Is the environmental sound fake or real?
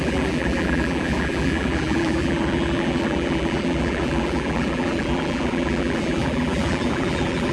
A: fake